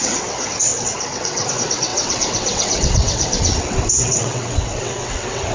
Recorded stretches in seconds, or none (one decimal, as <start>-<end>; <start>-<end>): none